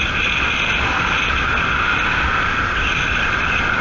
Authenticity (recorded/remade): recorded